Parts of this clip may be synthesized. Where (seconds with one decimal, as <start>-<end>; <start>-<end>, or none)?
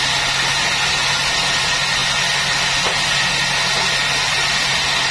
none